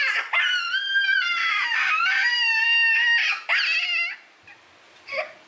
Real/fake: real